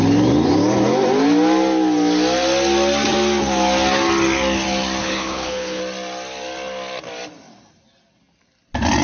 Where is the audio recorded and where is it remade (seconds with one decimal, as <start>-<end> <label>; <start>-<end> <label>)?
0.0-5.0 recorded; 5.0-5.8 remade; 5.8-9.0 recorded